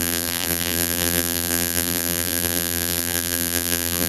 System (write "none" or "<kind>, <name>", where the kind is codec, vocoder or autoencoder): vocoder, BigVGAN v2